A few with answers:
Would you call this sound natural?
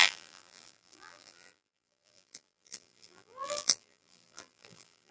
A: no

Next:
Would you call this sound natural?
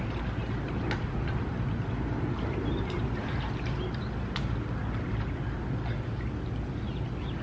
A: yes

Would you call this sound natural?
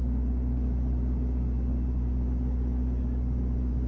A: yes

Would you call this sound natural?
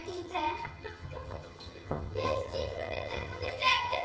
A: no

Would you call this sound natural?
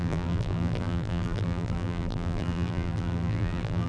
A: no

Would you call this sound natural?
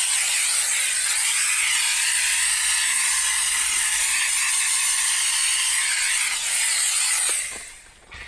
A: yes